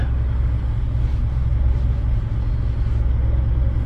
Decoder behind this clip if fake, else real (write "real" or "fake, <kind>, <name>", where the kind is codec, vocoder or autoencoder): real